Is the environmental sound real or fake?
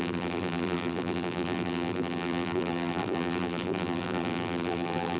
fake